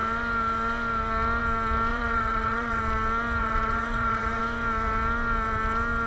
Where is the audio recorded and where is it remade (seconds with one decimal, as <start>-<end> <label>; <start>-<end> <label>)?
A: 0.0-1.9 recorded; 1.9-2.8 remade; 2.8-3.4 recorded; 3.4-4.4 remade; 4.4-6.1 recorded